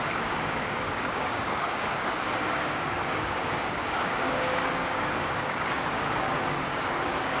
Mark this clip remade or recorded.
remade